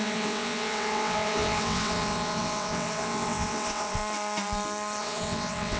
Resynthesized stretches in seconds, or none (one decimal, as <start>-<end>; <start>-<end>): 0.0-4.0; 5.0-5.8